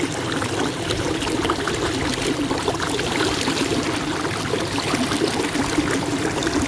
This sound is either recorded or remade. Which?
recorded